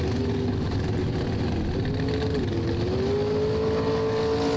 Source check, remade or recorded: recorded